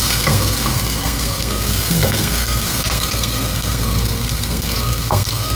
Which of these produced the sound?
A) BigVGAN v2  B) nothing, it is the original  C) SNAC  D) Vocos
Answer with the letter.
C